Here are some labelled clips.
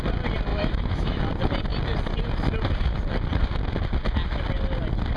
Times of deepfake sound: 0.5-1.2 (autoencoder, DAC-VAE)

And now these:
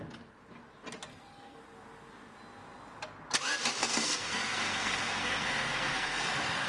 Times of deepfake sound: 1.1-1.6 (codec, SNAC); 3.8-6.7

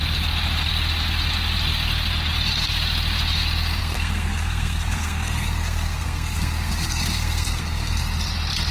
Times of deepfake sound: 3.8-8.0 (codec, SNAC)

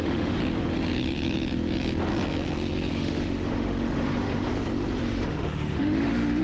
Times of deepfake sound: 0.0-0.4 (autoencoder, DAC-VAE); 2.9-4.5; 5.0-6.4

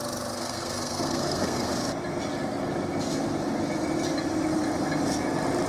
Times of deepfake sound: 0.4-1.7 (codec, SNAC)

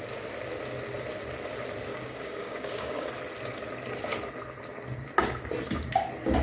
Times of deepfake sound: 1.9-3.1 (codec, DAC)

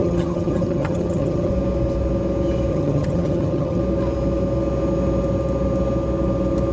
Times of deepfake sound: 0.0-1.5 (vocoder, HiFi-GAN); 2.7-3.8

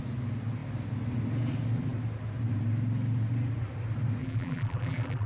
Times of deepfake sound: 4.2-5.3 (vocoder, BigVGAN v2)